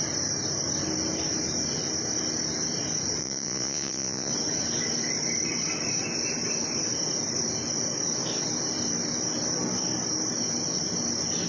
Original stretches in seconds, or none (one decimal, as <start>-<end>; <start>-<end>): 0.0-3.2; 4.3-11.5